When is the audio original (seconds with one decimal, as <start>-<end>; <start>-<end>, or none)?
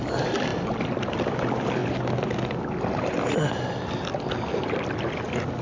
0.0-5.6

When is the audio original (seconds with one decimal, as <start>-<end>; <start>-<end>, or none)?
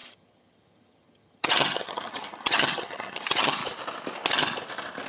3.6-5.1